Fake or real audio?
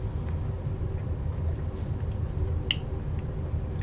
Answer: real